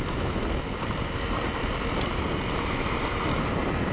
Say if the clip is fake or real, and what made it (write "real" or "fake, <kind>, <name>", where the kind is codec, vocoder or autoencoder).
real